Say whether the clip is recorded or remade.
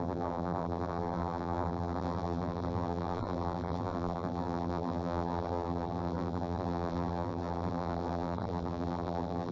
remade